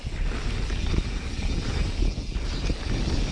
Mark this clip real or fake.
real